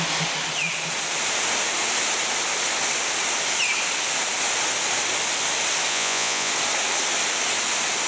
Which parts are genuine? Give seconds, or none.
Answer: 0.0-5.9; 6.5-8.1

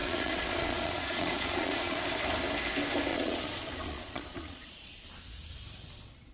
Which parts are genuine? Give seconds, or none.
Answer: 2.0-3.1; 4.9-6.3

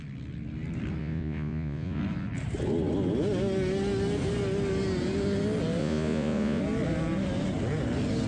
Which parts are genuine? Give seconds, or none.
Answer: 0.0-1.0; 2.0-5.8; 6.6-8.3

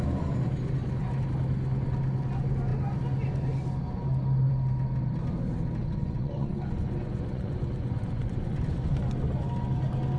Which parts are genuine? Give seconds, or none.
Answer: 0.0-6.0; 8.6-10.2

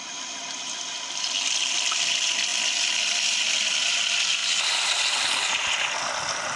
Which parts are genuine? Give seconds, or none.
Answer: 0.0-6.6

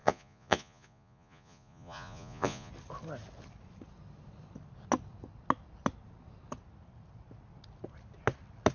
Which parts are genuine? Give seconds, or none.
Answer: 2.7-8.7

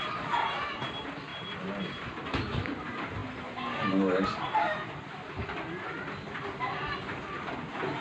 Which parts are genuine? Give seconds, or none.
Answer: 0.0-8.0